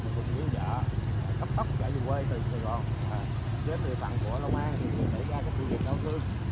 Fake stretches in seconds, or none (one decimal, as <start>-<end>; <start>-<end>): none